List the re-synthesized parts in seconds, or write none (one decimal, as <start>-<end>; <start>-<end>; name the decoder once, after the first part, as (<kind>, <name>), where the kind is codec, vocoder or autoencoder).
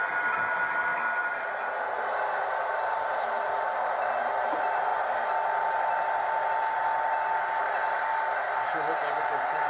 none